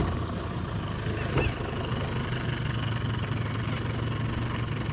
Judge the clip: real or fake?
real